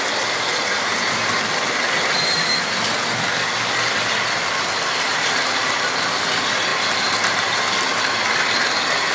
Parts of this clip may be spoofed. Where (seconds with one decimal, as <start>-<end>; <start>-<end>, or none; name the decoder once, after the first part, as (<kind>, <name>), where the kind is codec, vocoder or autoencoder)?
none